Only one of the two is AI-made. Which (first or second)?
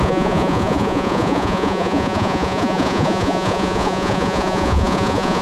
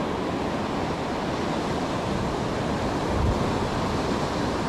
first